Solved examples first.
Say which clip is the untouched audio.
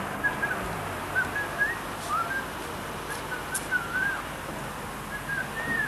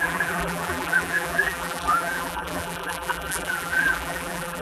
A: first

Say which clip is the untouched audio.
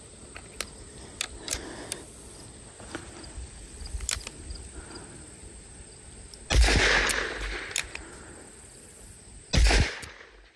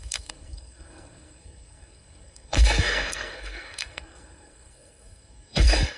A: first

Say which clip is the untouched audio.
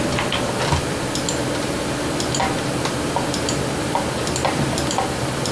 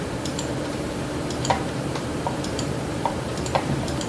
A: first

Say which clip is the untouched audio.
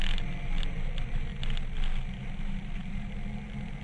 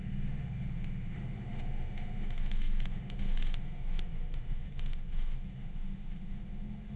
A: first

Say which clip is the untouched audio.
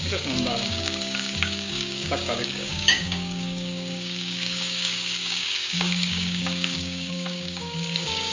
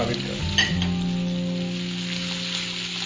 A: second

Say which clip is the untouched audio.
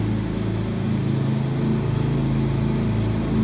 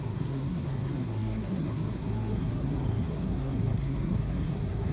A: first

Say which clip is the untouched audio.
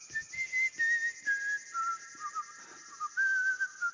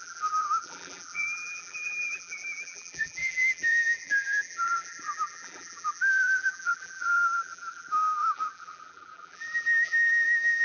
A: first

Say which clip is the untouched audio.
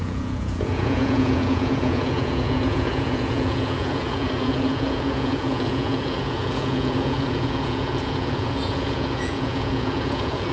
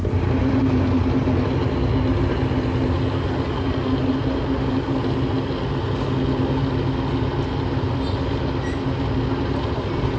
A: second